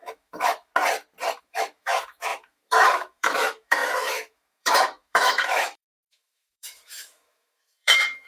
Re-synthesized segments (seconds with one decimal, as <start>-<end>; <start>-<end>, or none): 0.0-0.7; 1.4-8.3